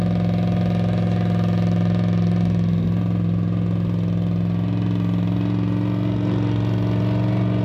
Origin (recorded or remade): recorded